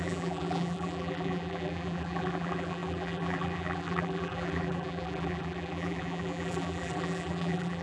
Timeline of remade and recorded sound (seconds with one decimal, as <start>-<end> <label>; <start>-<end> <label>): 0.0-7.8 remade

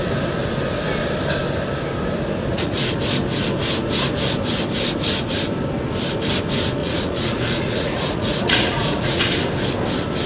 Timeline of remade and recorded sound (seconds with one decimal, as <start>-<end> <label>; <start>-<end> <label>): 0.0-2.5 recorded; 2.5-3.0 remade; 3.0-6.8 recorded; 6.8-9.2 remade; 9.2-10.3 recorded

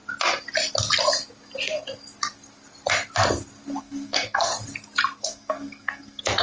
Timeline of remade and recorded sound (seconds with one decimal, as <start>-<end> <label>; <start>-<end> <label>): 0.0-3.8 recorded; 3.8-4.5 remade; 4.5-5.2 recorded; 5.2-6.4 remade